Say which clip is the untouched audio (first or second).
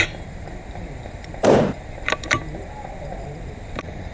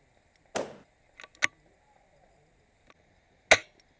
second